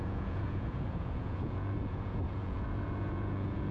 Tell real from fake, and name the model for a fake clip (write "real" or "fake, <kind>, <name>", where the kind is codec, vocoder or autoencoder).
fake, vocoder, Vocos